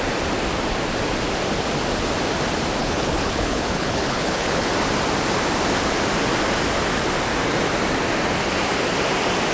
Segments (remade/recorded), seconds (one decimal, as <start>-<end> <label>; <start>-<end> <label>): 0.0-2.8 recorded; 2.8-4.7 remade; 4.7-9.5 recorded